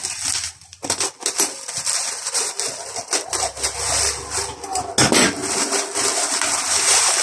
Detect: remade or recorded recorded